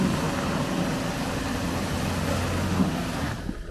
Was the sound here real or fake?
real